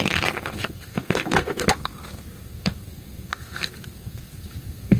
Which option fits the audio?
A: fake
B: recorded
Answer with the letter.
A